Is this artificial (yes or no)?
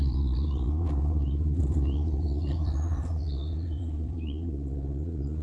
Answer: yes